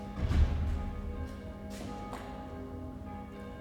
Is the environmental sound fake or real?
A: real